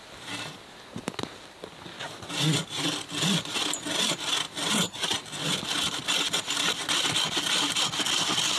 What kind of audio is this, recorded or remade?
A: recorded